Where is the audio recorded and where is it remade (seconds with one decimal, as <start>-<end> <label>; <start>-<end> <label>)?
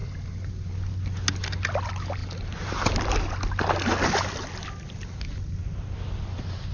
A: 0.0-6.7 recorded